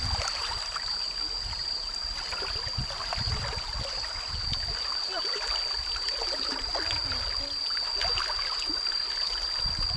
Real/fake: real